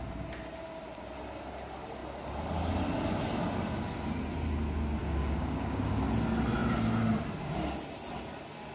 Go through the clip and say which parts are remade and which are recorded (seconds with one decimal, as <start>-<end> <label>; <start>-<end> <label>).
0.0-5.0 recorded; 5.0-5.9 remade; 5.9-8.7 recorded